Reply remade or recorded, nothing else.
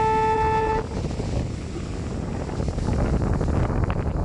recorded